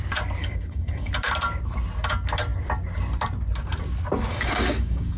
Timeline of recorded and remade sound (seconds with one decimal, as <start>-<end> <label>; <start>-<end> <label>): 0.0-0.4 recorded; 0.4-1.1 remade; 1.1-4.3 recorded; 4.3-5.2 remade